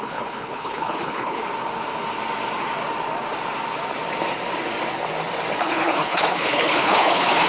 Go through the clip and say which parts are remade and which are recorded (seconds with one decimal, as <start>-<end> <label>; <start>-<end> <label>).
0.0-1.4 remade; 1.4-5.6 recorded; 5.6-7.5 remade